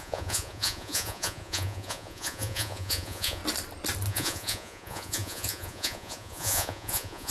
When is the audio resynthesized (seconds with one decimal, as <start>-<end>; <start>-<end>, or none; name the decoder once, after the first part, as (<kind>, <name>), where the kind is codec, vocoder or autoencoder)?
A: 0.0-3.4 (vocoder, Vocos); 4.1-7.3